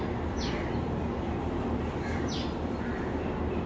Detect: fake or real real